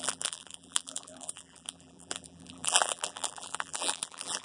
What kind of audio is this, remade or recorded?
remade